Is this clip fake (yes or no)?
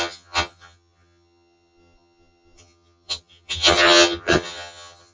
yes